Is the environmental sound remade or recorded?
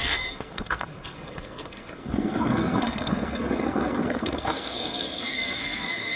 remade